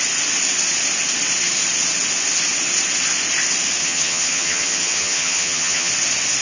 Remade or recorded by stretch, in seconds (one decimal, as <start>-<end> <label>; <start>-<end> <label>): 0.0-3.8 recorded; 3.8-5.9 remade; 5.9-6.4 recorded